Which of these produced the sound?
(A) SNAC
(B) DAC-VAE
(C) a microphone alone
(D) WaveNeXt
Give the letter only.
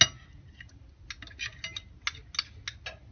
C